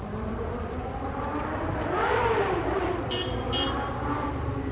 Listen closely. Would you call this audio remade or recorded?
remade